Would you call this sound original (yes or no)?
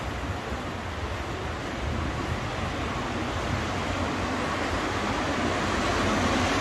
yes